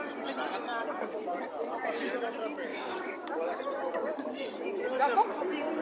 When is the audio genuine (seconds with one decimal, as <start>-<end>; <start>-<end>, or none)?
0.0-2.7; 3.6-5.8